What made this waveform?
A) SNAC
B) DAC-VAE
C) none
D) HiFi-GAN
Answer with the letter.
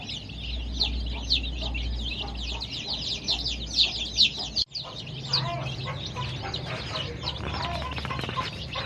C